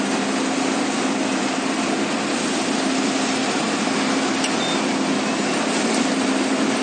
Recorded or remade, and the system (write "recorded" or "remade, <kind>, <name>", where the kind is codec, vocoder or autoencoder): recorded